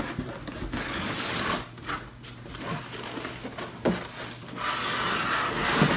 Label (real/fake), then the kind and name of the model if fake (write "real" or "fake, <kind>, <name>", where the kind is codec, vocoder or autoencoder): real